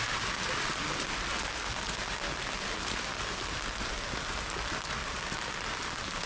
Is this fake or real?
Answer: real